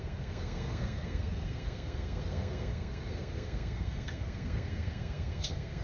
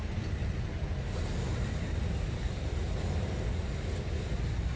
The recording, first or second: second